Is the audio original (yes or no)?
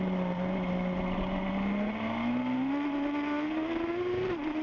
yes